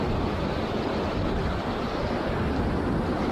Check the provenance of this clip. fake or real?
fake